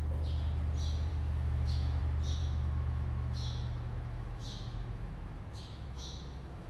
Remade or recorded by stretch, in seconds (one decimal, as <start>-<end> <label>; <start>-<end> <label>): 0.0-1.1 recorded; 1.1-2.0 remade; 2.0-2.4 recorded; 2.4-6.7 remade